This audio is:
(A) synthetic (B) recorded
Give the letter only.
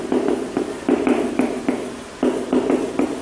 B